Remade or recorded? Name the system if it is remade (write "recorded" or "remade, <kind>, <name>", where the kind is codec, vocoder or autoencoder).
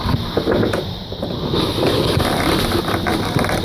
recorded